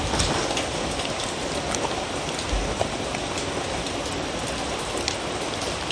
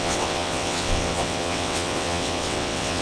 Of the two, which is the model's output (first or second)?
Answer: second